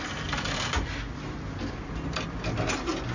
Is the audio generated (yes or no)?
no